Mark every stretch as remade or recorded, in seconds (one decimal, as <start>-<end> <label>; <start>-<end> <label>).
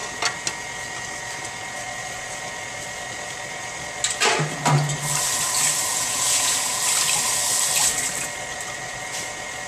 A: 0.0-5.9 recorded; 5.9-6.8 remade; 6.8-9.7 recorded